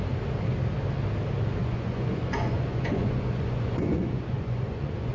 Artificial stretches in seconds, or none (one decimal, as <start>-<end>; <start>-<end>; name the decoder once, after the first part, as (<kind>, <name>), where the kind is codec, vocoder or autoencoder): 1.6-5.1 (vocoder, Vocos)